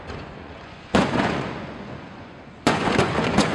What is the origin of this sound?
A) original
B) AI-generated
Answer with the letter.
B